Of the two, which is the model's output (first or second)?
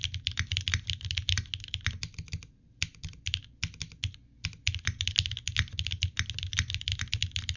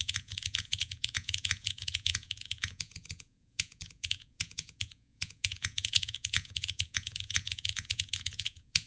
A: second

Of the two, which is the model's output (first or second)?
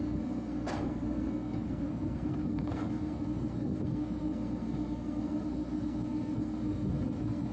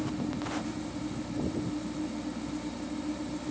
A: first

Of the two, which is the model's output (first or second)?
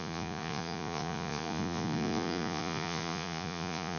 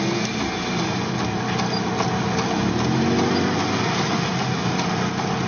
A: first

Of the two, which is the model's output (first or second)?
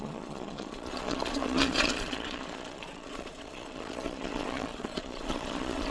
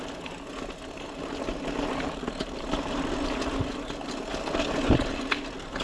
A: first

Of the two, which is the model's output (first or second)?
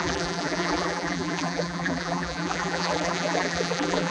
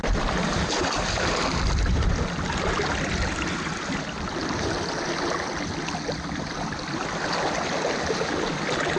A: first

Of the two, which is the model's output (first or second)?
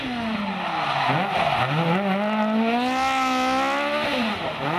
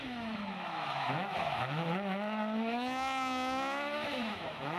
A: second